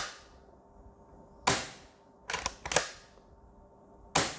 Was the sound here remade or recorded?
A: recorded